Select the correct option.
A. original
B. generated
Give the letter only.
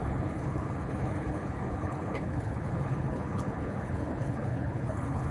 B